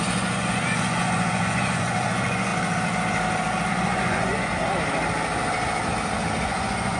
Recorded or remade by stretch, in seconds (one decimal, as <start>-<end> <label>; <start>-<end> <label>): 0.0-2.5 remade; 2.5-3.7 recorded; 3.7-4.5 remade; 4.5-6.4 recorded; 6.4-7.0 remade